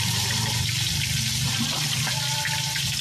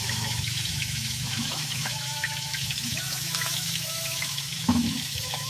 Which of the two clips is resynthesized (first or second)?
second